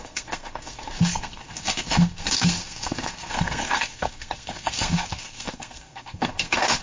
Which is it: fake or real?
fake